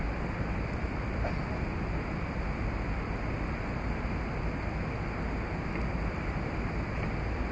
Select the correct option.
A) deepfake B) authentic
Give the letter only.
B